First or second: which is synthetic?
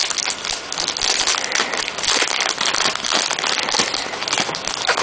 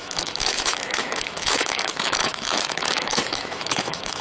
second